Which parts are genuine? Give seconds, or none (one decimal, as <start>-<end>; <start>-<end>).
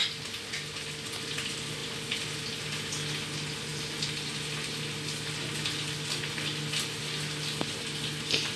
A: 0.0-8.6